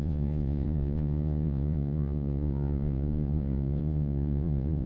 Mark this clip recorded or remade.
remade